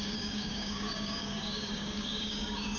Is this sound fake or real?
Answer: fake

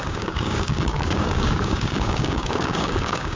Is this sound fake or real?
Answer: fake